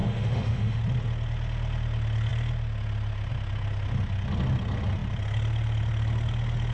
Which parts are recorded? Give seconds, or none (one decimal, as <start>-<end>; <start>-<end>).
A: 0.8-6.7